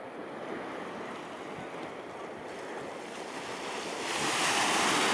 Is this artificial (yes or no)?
no